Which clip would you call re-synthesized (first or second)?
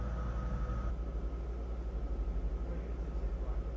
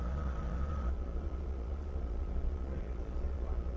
second